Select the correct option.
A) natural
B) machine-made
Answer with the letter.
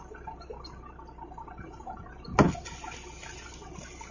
A